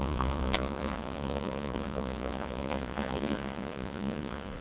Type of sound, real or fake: fake